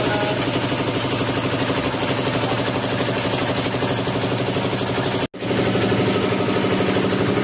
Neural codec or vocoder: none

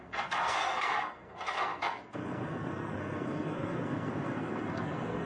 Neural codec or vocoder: codec, SNAC